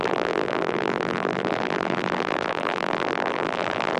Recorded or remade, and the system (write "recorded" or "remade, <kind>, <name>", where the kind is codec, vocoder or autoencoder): remade, vocoder, BigVGAN v2